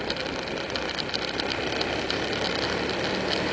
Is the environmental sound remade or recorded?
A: recorded